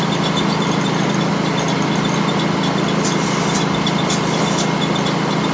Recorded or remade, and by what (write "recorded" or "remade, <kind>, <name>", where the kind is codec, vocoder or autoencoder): recorded